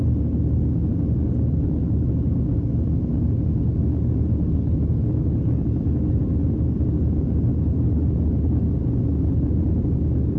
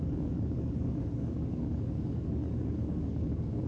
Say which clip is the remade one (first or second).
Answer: second